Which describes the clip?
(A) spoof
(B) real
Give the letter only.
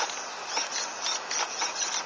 B